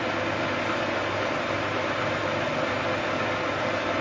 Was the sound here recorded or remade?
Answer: recorded